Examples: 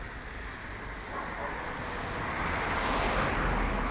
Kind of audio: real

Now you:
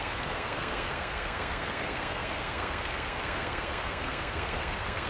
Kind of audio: fake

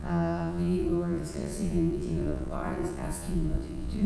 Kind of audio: fake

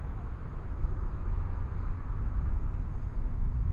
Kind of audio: fake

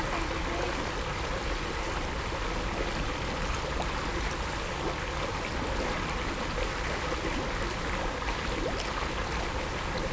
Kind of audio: real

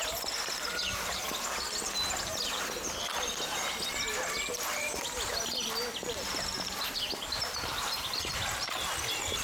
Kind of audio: real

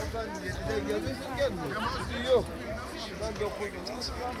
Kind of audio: real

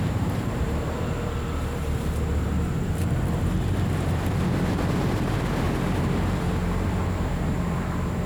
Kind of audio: fake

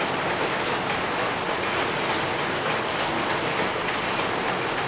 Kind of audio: real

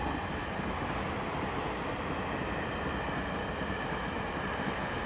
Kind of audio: real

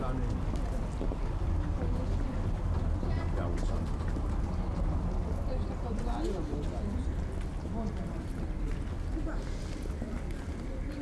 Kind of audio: real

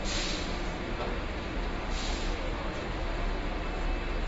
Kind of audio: real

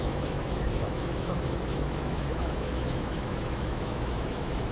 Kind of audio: fake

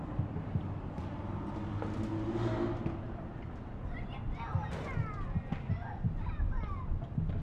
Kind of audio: real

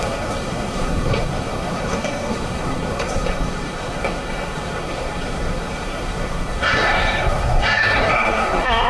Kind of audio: fake